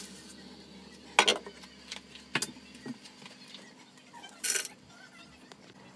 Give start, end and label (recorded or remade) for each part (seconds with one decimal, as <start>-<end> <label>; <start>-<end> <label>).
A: 0.0-6.0 recorded